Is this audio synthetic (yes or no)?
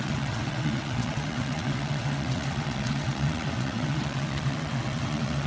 yes